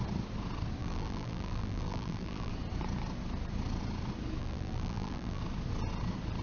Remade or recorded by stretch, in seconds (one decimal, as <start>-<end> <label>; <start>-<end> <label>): 0.0-0.8 recorded; 0.8-2.5 remade; 2.5-4.4 recorded; 4.4-5.4 remade; 5.4-6.4 recorded

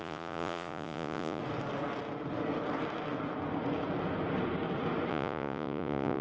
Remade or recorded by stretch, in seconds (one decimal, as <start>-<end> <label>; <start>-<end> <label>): 0.0-1.4 remade; 1.4-5.1 recorded; 5.1-6.2 remade

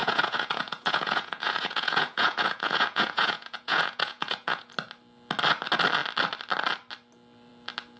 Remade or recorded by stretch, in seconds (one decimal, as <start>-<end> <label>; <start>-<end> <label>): 0.0-4.7 remade; 4.7-8.0 recorded

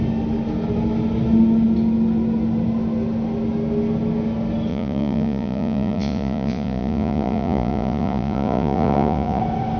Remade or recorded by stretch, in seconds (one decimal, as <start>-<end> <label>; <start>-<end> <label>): 0.0-4.7 recorded; 4.7-9.4 remade; 9.4-9.8 recorded

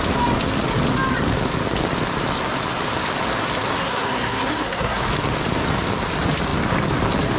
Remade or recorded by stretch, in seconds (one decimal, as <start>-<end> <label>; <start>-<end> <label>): 0.0-3.7 recorded; 3.7-5.0 remade; 5.0-7.4 recorded

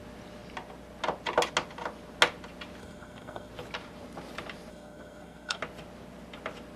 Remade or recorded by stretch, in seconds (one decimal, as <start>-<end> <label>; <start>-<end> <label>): 0.0-2.8 recorded; 2.8-3.5 remade; 3.5-4.7 recorded; 4.7-5.6 remade; 5.6-6.8 recorded

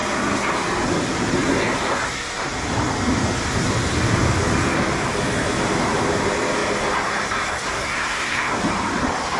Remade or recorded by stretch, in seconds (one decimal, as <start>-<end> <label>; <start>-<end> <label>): 0.0-7.7 recorded; 7.7-8.6 remade; 8.6-9.4 recorded

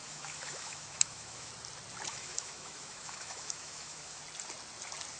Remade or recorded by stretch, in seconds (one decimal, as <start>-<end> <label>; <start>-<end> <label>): 0.0-1.5 remade; 1.5-2.1 recorded; 2.1-4.2 remade; 4.2-5.2 recorded